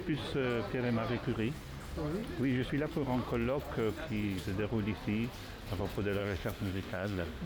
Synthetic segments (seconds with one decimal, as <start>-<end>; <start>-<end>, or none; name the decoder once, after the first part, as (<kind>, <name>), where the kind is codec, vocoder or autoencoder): 6.2-7.5 (autoencoder, DAC-VAE)